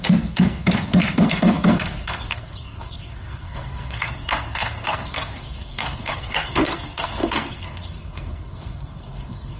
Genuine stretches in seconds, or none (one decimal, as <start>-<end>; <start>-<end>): none